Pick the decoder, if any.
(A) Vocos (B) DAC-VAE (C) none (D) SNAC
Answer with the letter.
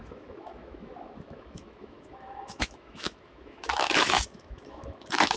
B